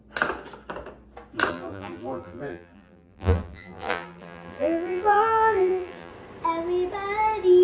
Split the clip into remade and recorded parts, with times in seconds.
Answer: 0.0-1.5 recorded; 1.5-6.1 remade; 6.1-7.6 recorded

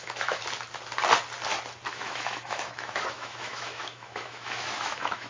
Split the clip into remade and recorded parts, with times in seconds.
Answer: 0.0-0.4 remade; 0.4-1.9 recorded; 1.9-5.3 remade

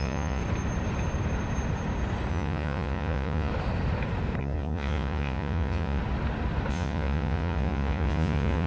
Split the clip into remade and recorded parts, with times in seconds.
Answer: 0.0-0.4 remade; 0.4-2.3 recorded; 2.3-3.5 remade; 3.5-4.4 recorded; 4.4-6.0 remade; 6.0-6.7 recorded; 6.7-8.7 remade

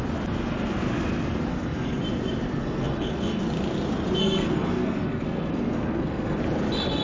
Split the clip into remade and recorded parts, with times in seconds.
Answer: 0.0-1.5 recorded; 1.5-2.0 remade; 2.0-2.6 recorded; 2.6-3.4 remade; 3.4-4.2 recorded; 4.2-6.4 remade; 6.4-7.0 recorded

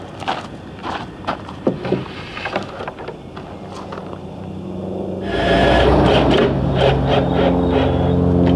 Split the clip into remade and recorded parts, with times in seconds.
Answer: 0.0-0.8 recorded; 0.8-2.7 remade; 2.7-4.0 recorded; 4.0-6.9 remade; 6.9-8.6 recorded

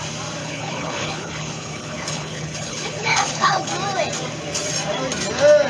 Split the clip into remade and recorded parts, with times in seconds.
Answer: 0.0-0.4 recorded; 0.4-3.7 remade; 3.7-5.7 recorded